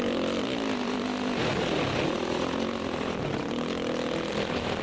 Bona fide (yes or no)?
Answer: yes